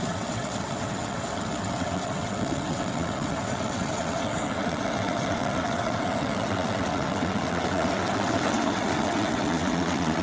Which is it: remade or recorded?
remade